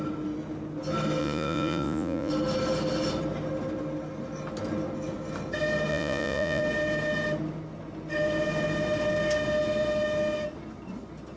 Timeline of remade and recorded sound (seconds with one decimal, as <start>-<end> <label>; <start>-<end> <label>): 0.0-1.2 recorded; 1.2-2.3 remade; 2.3-5.9 recorded; 5.9-6.6 remade; 6.6-11.4 recorded